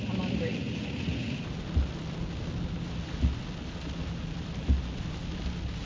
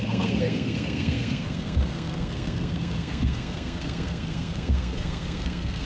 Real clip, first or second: first